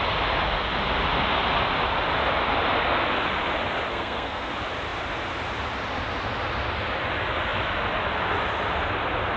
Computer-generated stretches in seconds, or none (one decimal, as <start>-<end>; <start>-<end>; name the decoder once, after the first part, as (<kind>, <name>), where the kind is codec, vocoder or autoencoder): 3.9-4.5 (codec, SNAC)